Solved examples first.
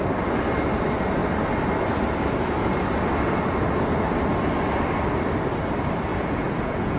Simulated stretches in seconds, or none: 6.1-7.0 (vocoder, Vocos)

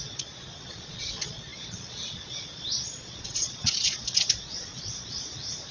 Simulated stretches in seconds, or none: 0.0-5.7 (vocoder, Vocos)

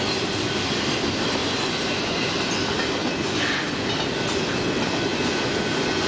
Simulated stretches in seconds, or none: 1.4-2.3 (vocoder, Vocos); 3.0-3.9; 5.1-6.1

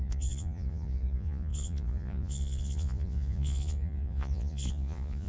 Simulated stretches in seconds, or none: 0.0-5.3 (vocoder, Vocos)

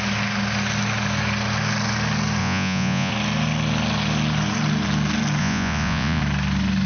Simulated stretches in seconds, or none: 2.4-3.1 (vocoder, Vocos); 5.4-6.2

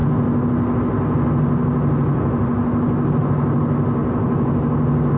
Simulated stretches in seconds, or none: none

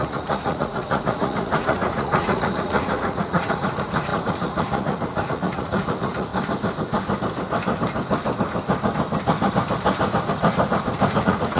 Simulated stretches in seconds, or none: 0.0-6.3 (vocoder, Vocos); 11.2-11.6